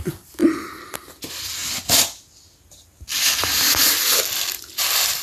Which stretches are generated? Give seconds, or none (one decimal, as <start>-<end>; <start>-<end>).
none